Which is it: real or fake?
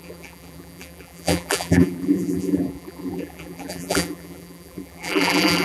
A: fake